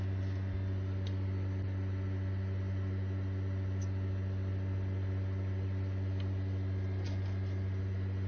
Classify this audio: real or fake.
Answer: real